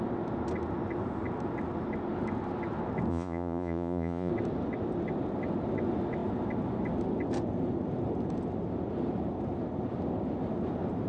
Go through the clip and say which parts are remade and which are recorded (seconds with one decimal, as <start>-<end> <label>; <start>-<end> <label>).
0.0-3.1 recorded; 3.1-4.3 remade; 4.3-11.1 recorded